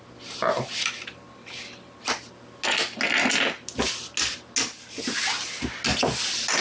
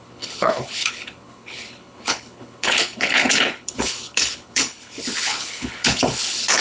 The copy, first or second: second